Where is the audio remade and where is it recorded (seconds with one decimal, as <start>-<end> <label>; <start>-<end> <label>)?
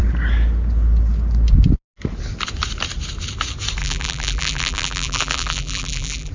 0.0-3.8 recorded; 3.8-6.3 remade